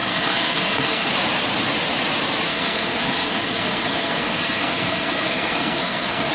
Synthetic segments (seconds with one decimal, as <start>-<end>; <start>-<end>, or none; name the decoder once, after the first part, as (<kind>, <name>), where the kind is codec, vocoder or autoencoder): 0.0-1.1 (codec, SNAC); 2.5-6.3